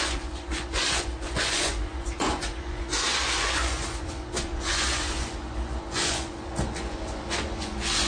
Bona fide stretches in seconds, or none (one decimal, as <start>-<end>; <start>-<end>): none